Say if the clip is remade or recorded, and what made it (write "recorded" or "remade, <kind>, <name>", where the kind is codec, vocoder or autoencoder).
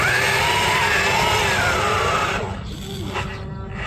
recorded